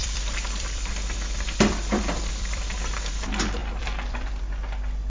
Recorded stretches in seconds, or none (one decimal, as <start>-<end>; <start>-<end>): 3.1-3.6; 4.4-5.1